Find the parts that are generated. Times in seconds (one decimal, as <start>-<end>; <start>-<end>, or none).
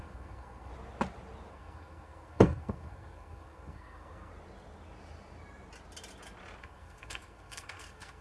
0.0-0.7; 1.5-4.3; 6.6-8.2